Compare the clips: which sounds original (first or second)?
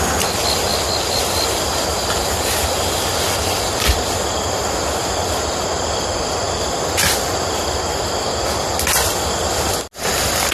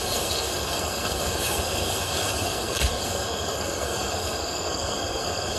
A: first